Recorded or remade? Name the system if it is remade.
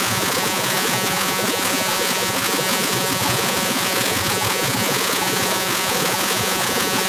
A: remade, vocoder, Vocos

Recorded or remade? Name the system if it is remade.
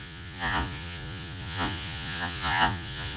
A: remade, vocoder, Vocos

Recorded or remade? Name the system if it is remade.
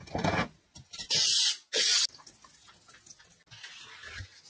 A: recorded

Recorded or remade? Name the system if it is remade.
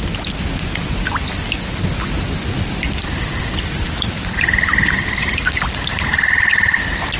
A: recorded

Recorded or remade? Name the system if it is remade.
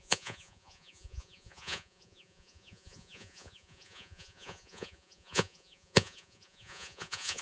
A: remade, vocoder, Vocos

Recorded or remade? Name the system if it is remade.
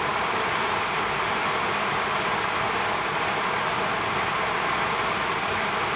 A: recorded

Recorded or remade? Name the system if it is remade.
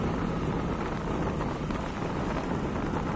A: recorded